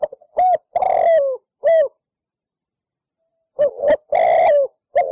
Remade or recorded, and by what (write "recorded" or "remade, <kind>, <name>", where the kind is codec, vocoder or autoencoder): recorded